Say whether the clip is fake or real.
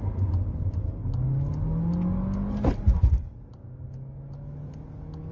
real